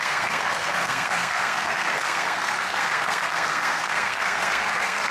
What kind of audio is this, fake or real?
fake